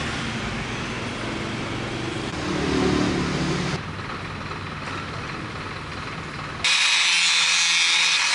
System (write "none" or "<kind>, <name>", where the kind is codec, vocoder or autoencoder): none